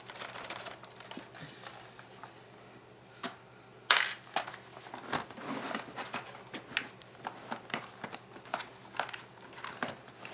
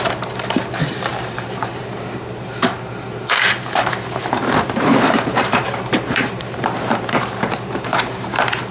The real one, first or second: first